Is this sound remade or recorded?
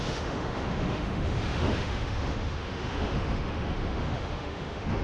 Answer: remade